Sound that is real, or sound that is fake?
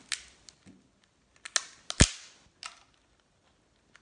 real